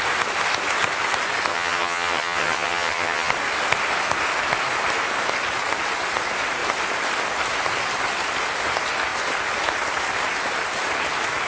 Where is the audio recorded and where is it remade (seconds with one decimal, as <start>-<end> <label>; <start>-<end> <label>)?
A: 0.0-1.5 recorded; 1.5-3.3 remade; 3.3-11.5 recorded